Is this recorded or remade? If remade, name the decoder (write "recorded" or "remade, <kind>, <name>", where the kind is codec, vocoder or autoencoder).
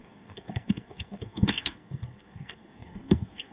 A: remade, codec, SNAC